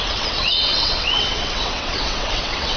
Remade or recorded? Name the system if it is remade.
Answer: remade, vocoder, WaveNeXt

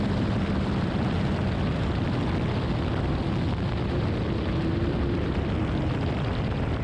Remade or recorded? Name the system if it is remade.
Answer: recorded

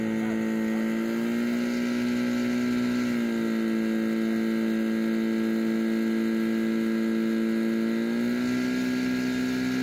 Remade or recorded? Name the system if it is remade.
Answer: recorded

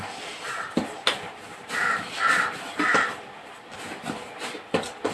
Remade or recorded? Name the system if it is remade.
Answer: recorded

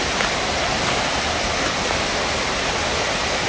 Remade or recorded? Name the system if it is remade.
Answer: recorded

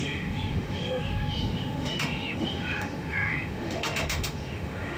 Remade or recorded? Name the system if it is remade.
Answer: remade, autoencoder, DAC-VAE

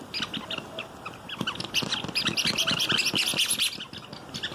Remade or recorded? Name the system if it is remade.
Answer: recorded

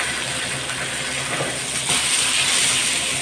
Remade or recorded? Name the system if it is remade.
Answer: recorded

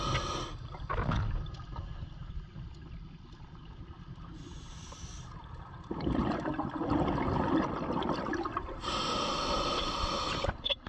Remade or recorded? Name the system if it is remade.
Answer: recorded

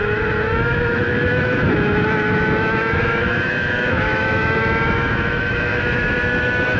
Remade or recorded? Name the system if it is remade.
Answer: remade, autoencoder, DAC-VAE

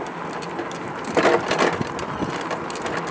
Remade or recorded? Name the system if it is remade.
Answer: recorded